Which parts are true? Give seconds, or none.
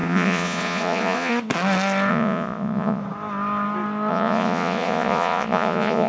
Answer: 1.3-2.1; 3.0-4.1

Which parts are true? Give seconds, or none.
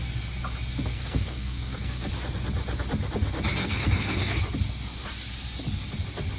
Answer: 0.0-0.9; 2.1-3.6; 4.4-6.4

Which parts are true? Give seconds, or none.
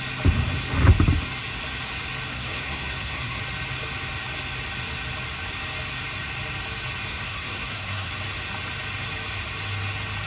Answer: 0.0-2.3; 3.4-7.1; 8.1-10.3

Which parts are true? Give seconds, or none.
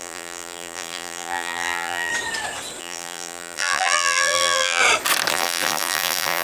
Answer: 2.1-2.8; 4.8-5.3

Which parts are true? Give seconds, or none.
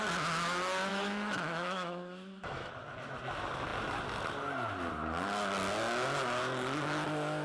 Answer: 0.0-0.9; 2.7-7.4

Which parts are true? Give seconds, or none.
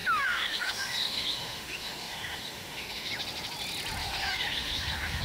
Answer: 3.1-4.0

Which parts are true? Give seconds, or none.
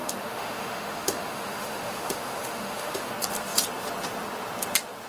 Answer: 3.1-5.1